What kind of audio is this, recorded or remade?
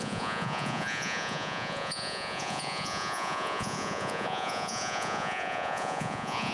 remade